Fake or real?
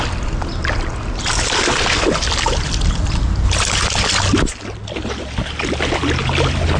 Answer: real